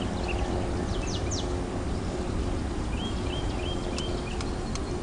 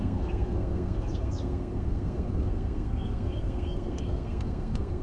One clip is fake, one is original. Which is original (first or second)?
first